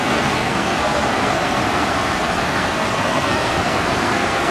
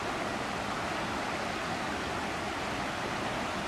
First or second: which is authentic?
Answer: second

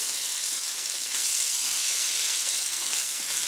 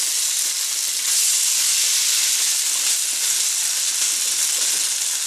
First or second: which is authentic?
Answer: second